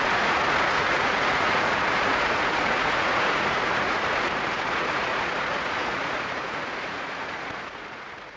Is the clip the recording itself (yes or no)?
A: no